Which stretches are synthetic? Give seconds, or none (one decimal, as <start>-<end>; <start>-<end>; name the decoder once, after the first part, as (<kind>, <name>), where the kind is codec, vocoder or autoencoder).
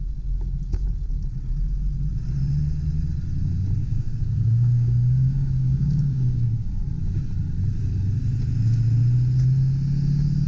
3.8-6.8 (codec, DAC)